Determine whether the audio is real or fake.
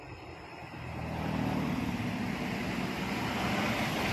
real